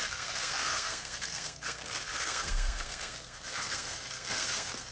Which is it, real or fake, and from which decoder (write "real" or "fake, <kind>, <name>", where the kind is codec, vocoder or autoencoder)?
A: fake, codec, SNAC